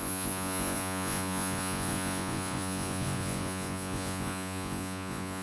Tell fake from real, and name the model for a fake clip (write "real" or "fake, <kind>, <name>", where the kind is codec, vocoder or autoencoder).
fake, vocoder, Vocos